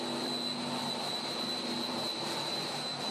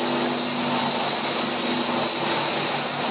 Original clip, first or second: second